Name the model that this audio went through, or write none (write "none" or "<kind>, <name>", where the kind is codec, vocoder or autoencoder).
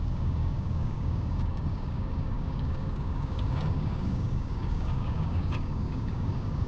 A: codec, DAC